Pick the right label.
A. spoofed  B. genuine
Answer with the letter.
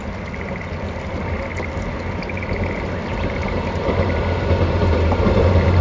B